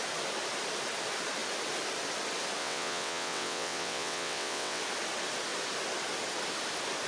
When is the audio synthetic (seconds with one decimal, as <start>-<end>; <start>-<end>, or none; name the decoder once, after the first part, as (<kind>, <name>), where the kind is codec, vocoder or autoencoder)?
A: 2.6-4.8 (vocoder, WaveNeXt)